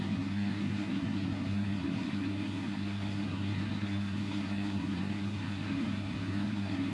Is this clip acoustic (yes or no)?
no